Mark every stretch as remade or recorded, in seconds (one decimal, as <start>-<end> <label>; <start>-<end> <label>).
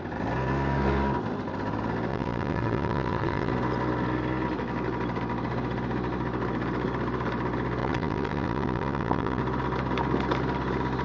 0.0-2.1 recorded; 2.1-3.5 remade; 3.5-7.8 recorded; 7.8-9.4 remade; 9.4-11.0 recorded